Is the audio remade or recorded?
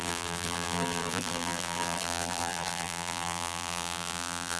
remade